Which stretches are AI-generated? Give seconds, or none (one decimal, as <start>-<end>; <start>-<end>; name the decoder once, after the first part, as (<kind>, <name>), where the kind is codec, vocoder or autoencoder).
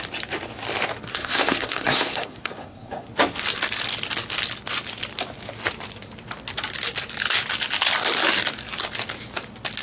1.1-3.1 (codec, SNAC)